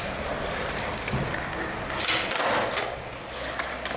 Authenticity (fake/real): real